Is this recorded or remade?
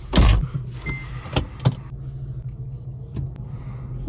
recorded